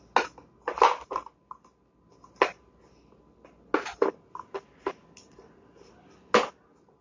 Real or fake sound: real